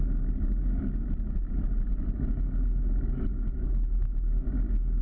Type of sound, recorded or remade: recorded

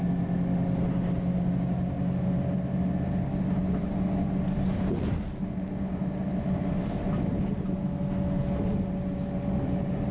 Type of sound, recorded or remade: recorded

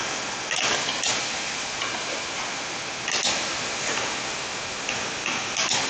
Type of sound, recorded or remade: recorded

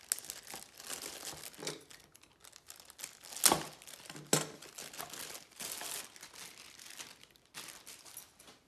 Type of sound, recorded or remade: recorded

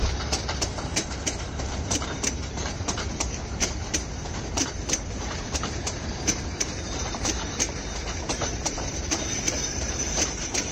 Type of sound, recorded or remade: remade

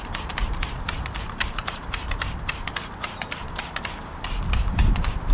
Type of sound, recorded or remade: remade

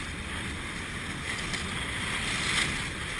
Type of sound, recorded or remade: recorded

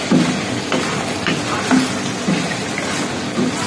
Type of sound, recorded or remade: recorded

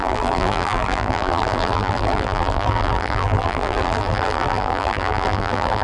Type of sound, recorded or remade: remade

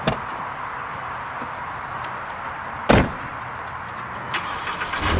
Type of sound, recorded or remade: recorded